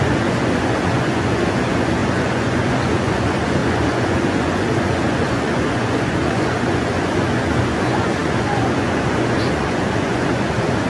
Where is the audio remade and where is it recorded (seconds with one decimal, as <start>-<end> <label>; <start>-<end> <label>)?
0.0-10.9 remade